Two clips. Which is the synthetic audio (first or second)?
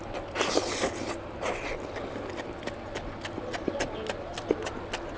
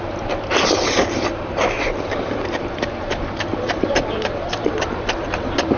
second